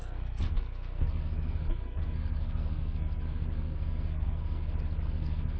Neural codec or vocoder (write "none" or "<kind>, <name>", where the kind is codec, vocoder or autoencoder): codec, SNAC